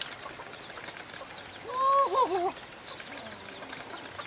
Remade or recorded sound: recorded